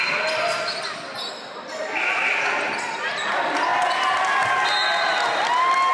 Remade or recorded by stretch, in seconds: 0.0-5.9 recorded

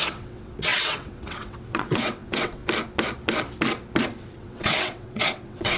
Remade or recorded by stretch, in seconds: 0.0-2.6 remade; 2.6-4.2 recorded; 4.2-5.8 remade